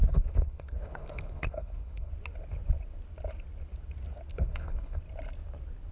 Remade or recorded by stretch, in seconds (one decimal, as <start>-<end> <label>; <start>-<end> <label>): 0.0-2.1 remade; 2.1-4.3 recorded; 4.3-5.0 remade; 5.0-5.9 recorded